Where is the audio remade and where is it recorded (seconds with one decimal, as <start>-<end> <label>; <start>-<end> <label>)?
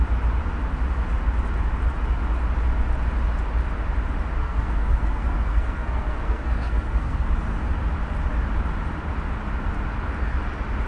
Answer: 0.0-4.4 recorded; 4.4-7.3 remade; 7.3-10.9 recorded